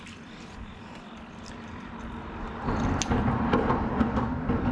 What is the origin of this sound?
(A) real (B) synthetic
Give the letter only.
A